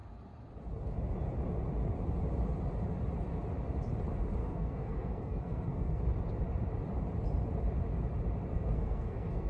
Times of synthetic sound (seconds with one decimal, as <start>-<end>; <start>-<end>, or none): 4.4-6.0; 8.5-9.5